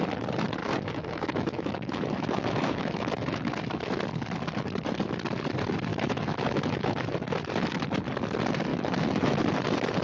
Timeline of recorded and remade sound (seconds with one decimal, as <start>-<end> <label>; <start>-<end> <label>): 0.0-0.6 recorded; 0.6-3.8 remade; 3.8-5.9 recorded; 5.9-7.4 remade; 7.4-8.7 recorded; 8.7-9.4 remade; 9.4-10.0 recorded